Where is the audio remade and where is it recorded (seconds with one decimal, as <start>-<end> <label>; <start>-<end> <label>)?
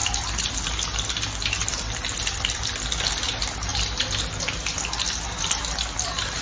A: 0.0-1.6 recorded; 1.6-3.3 remade; 3.3-3.7 recorded; 3.7-4.3 remade; 4.3-6.4 recorded